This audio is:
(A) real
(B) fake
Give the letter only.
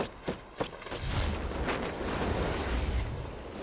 A